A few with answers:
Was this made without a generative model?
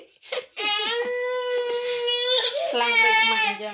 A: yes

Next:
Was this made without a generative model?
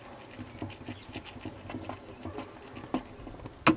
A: yes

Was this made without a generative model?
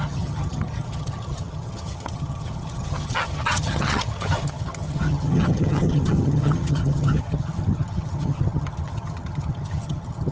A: no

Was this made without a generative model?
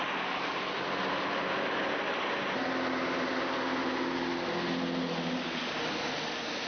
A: yes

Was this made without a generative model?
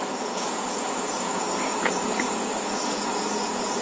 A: no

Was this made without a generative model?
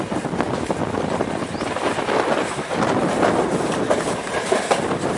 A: yes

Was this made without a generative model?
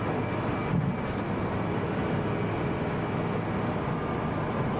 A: yes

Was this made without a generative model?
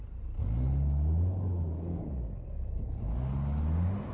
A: yes